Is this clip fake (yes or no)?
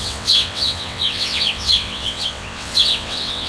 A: yes